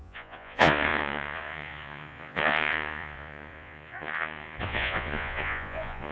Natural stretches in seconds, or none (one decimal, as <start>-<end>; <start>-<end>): none